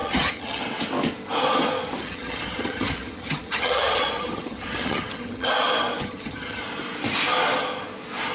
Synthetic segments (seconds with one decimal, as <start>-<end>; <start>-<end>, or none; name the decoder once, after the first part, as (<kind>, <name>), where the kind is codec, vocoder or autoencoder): 0.0-0.6 (vocoder, HiFi-GAN); 2.0-5.5; 6.0-6.6